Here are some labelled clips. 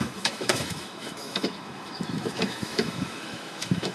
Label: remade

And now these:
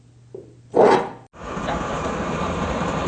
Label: recorded